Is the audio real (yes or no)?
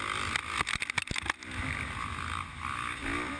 yes